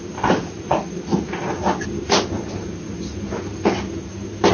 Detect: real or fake real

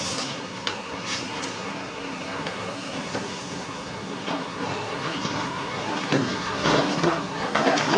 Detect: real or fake fake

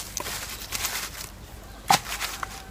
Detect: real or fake fake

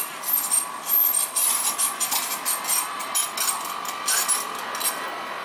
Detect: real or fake real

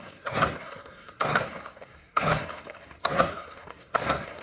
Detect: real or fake fake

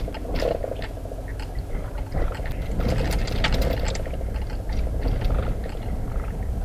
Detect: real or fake real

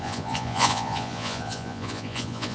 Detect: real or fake fake